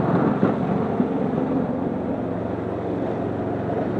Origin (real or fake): real